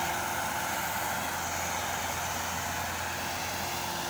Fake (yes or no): no